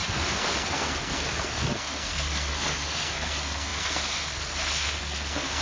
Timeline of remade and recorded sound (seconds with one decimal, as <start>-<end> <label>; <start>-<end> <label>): 0.0-5.6 remade